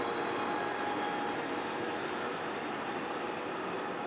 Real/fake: real